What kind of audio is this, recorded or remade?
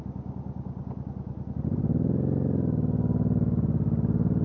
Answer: recorded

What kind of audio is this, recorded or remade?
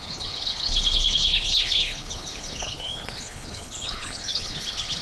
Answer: remade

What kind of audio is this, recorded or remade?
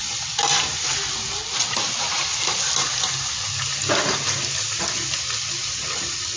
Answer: recorded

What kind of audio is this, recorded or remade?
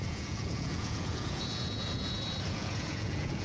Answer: remade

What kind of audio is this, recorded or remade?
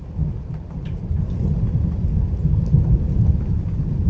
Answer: recorded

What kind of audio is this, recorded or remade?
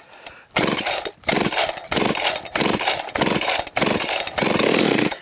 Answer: recorded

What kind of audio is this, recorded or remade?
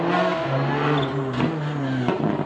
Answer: recorded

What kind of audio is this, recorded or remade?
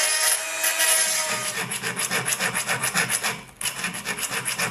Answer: recorded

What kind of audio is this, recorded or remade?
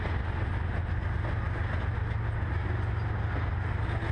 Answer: recorded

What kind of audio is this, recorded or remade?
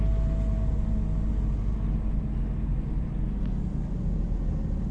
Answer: recorded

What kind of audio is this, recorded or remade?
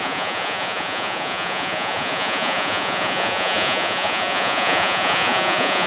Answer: remade